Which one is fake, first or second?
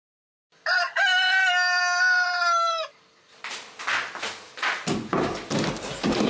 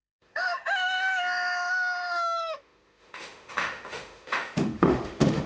second